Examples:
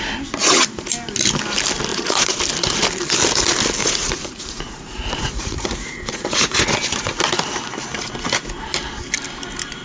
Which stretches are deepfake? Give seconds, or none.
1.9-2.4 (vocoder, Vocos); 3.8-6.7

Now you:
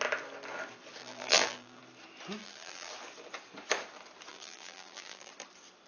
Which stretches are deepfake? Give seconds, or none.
1.0-1.8 (vocoder, BigVGAN v2); 2.4-2.9; 4.3-5.3

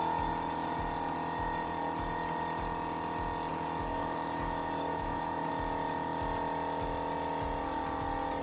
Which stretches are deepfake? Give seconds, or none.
3.5-5.5 (codec, DAC)

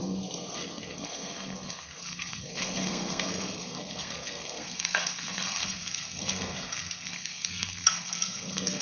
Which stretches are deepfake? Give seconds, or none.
0.0-8.8 (codec, SNAC)

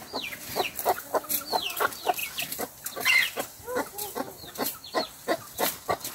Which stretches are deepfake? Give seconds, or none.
none

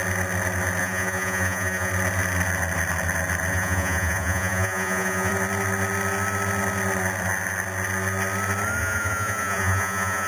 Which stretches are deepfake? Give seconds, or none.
0.8-1.9 (vocoder, Vocos); 3.5-5.3; 8.8-10.3

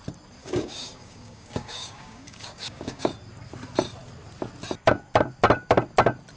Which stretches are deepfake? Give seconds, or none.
0.4-3.1 (codec, DAC)

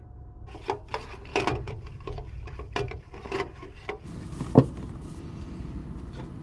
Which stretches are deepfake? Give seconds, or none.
none